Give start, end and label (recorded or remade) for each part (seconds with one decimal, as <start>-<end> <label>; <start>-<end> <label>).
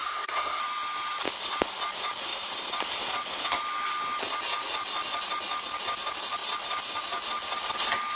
0.0-0.6 remade; 0.6-8.2 recorded